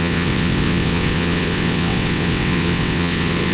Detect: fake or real fake